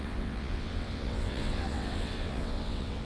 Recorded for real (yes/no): no